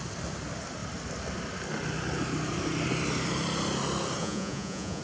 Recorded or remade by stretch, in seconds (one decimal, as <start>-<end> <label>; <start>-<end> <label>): 0.0-4.2 recorded; 4.2-5.0 remade